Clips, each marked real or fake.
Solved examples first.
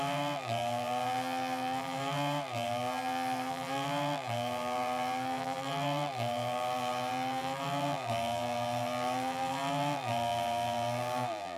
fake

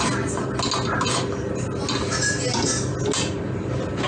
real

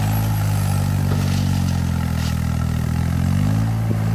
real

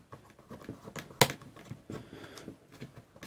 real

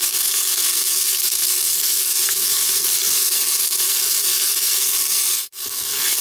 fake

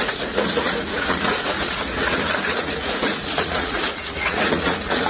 fake